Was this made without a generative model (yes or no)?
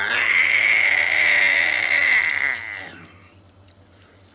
yes